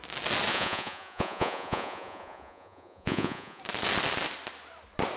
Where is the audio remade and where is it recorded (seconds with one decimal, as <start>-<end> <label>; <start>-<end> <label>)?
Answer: 0.0-0.5 recorded; 0.5-3.6 remade; 3.6-5.2 recorded